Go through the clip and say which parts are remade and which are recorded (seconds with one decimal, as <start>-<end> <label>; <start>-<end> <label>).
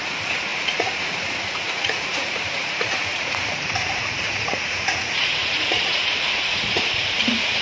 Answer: 0.0-7.6 remade